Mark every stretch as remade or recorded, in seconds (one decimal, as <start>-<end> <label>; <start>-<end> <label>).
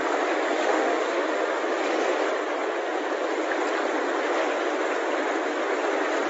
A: 0.0-0.5 recorded; 0.5-1.6 remade; 1.6-6.3 recorded